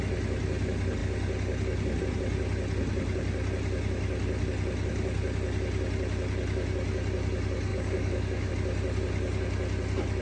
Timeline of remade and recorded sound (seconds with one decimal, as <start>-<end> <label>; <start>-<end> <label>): 0.0-7.7 recorded; 7.7-8.5 remade; 8.5-10.2 recorded